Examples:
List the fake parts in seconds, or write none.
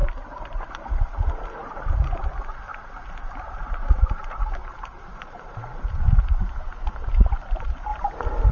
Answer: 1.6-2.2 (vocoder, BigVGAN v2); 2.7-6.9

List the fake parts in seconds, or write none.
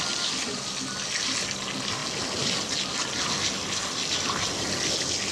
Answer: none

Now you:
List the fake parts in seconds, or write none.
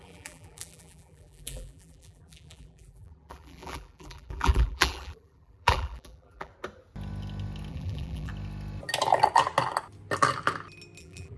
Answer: 0.0-6.5 (vocoder, BigVGAN v2); 7.7-8.3; 11.0-11.4